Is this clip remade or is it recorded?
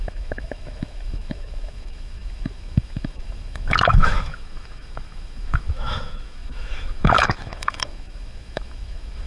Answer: remade